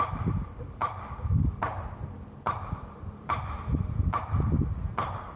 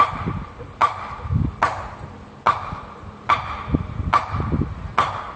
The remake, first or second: first